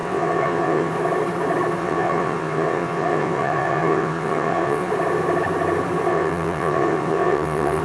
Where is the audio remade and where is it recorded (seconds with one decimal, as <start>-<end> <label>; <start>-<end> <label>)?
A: 0.0-0.9 remade; 0.9-1.8 recorded; 1.8-4.9 remade; 4.9-6.1 recorded; 6.1-7.8 remade